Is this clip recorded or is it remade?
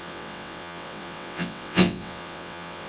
remade